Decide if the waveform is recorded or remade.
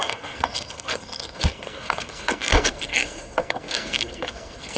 remade